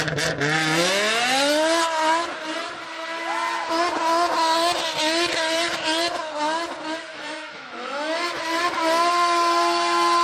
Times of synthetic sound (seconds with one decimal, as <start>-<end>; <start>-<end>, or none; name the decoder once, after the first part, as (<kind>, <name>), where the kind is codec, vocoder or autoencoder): 7.1-8.4 (autoencoder, DAC-VAE)

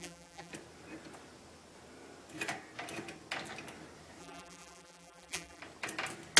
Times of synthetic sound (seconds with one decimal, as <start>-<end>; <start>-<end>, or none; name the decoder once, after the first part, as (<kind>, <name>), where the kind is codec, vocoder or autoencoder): 0.0-0.5 (vocoder, BigVGAN v2); 4.2-5.6